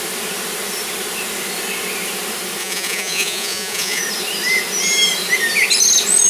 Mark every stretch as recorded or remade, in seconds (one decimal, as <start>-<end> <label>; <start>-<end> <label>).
0.0-2.6 recorded; 2.6-4.0 remade; 4.0-6.3 recorded